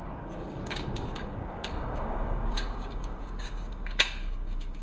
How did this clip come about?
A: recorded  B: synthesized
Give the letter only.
B